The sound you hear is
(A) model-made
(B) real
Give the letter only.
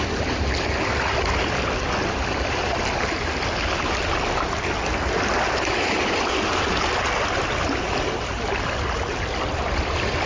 B